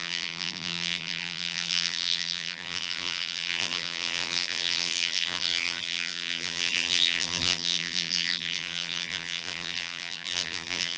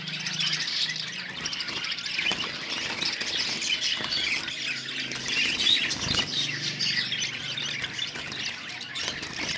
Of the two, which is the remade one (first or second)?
first